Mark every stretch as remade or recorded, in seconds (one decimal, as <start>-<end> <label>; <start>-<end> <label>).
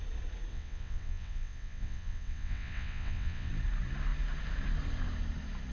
0.0-0.5 recorded; 0.5-3.5 remade; 3.5-5.7 recorded